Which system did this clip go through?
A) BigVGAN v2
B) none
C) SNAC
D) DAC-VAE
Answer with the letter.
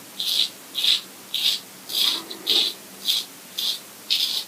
B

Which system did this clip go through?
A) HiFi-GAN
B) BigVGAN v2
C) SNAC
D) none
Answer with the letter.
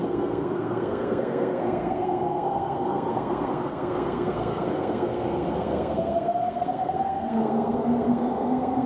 C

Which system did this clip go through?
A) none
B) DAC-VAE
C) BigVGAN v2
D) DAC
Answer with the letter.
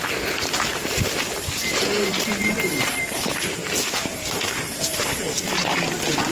C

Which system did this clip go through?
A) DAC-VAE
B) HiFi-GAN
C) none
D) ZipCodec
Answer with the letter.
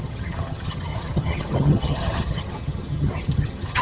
B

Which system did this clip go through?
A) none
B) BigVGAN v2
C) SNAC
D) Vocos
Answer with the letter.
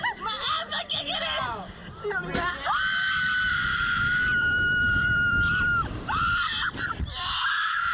B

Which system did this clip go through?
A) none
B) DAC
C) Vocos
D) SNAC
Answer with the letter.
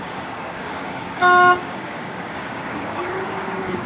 B